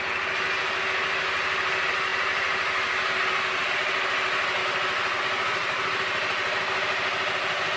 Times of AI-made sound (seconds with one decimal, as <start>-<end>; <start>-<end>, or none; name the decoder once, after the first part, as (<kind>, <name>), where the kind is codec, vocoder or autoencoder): none